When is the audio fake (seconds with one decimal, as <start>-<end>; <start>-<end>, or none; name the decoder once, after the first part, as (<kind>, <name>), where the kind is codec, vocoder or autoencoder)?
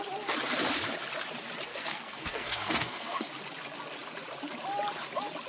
1.7-3.3 (codec, SNAC)